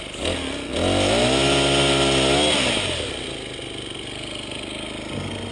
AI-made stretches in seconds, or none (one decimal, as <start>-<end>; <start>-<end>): none